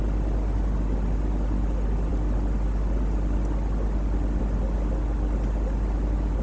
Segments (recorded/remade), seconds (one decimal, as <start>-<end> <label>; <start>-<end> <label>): 0.0-6.4 recorded